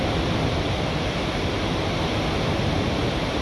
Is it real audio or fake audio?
real